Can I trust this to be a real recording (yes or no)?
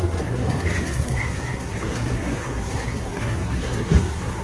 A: no